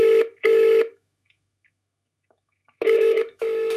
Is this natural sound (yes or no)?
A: no